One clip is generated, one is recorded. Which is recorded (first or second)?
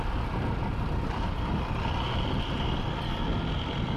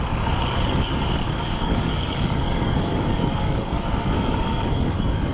first